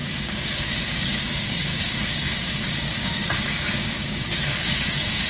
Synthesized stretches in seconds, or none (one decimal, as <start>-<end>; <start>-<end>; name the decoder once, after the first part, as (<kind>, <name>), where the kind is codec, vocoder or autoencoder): 0.0-5.3 (codec, DAC)